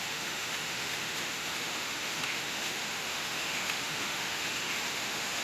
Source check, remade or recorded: remade